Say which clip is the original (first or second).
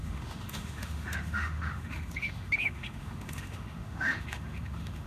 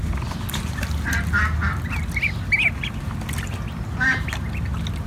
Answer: second